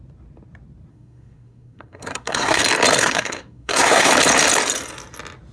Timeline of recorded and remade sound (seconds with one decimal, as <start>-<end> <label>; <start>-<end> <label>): 0.0-0.9 recorded; 0.9-2.6 remade; 2.6-3.0 recorded; 3.0-4.1 remade; 4.1-5.5 recorded